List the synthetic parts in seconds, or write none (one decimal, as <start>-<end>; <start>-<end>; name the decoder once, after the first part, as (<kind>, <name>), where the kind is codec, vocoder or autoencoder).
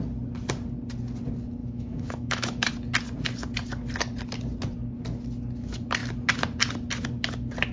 1.6-2.7 (autoencoder, DAC-VAE)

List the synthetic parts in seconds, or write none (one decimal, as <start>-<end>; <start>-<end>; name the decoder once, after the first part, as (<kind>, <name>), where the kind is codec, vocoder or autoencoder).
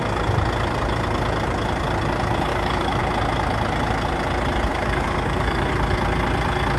2.5-3.0 (codec, DAC); 4.7-5.7